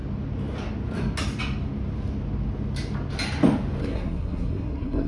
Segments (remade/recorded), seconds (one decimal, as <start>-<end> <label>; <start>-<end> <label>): 0.0-3.8 recorded; 3.8-5.1 remade